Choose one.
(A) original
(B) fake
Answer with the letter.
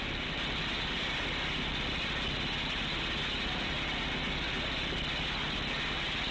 A